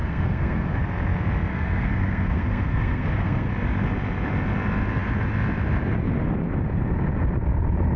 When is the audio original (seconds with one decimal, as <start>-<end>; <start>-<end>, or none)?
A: 0.8-1.5; 3.5-8.0